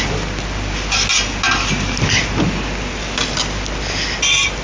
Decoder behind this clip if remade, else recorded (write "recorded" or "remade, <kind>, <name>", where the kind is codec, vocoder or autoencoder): recorded